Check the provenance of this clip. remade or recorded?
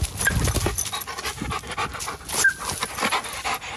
recorded